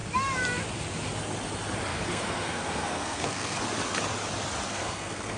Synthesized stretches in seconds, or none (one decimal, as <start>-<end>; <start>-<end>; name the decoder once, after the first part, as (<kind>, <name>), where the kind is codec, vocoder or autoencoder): 1.9-3.6 (codec, SNAC); 4.7-5.4